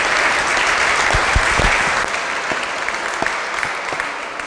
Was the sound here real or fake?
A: real